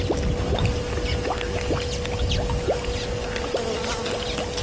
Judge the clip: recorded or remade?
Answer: recorded